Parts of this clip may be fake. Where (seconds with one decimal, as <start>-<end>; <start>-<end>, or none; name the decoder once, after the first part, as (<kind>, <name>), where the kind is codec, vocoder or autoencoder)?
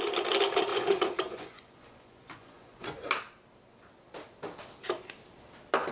0.7-3.1 (vocoder, Vocos)